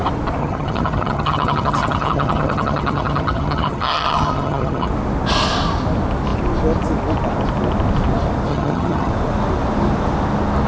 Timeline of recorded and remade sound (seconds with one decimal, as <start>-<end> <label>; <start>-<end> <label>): 0.0-0.4 recorded; 0.4-4.9 remade; 4.9-8.5 recorded; 8.5-9.1 remade; 9.1-10.7 recorded